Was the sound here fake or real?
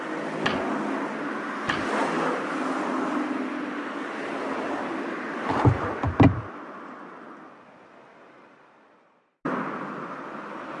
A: real